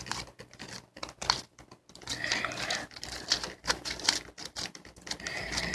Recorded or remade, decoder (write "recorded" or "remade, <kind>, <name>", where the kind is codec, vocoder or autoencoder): remade, vocoder, BigVGAN v2